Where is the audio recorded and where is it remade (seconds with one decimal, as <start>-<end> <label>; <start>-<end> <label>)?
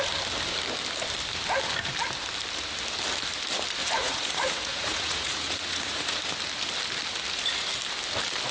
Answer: 0.0-3.8 recorded; 3.8-6.3 remade; 6.3-8.5 recorded